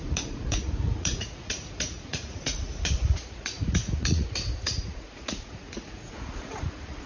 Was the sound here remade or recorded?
remade